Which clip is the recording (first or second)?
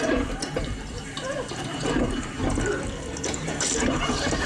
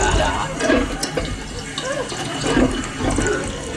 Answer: second